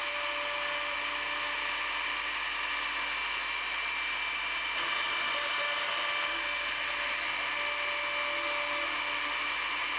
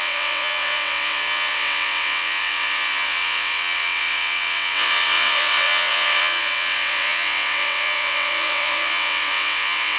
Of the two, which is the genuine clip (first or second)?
first